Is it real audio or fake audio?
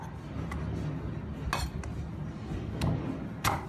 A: real